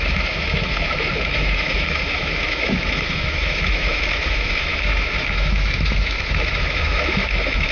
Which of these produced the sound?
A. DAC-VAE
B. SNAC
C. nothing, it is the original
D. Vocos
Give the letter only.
A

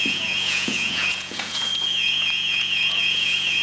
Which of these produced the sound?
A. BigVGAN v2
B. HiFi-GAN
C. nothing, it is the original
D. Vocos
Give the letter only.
D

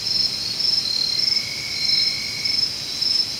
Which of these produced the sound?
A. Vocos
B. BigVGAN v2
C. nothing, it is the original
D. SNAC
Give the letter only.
C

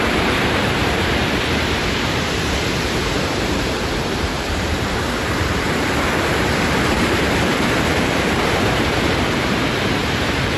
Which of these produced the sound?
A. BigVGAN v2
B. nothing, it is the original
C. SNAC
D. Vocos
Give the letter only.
A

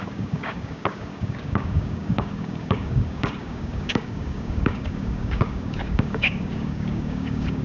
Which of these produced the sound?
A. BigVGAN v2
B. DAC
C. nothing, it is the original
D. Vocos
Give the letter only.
B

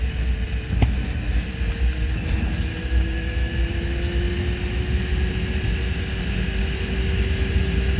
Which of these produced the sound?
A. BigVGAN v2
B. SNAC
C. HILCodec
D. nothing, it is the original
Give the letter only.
D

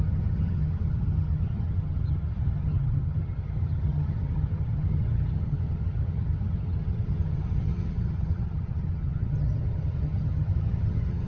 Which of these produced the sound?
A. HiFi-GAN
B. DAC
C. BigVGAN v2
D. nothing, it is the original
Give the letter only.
A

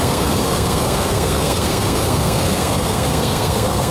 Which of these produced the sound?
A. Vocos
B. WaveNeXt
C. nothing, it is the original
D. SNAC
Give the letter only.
D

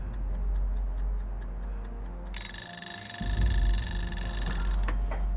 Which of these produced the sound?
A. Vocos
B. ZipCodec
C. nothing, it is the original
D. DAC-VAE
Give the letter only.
C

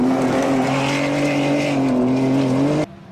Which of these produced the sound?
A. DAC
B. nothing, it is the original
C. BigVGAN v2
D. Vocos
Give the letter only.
B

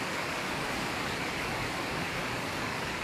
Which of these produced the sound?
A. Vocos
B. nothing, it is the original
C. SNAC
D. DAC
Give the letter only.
D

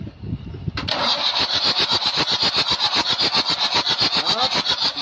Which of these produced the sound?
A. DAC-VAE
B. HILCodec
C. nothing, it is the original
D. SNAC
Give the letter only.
C